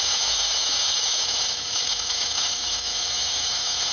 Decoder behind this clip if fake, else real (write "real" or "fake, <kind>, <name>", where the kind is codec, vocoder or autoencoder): fake, autoencoder, DAC-VAE